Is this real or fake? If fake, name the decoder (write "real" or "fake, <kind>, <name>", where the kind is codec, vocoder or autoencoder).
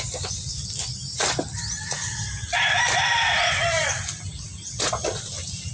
real